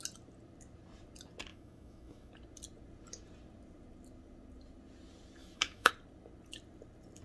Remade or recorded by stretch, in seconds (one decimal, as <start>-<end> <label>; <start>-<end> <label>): 0.0-1.5 recorded; 1.5-2.3 remade; 2.3-5.4 recorded; 5.4-5.9 remade; 5.9-7.2 recorded